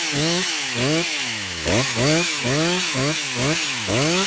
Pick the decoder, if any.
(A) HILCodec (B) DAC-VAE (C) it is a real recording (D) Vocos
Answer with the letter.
B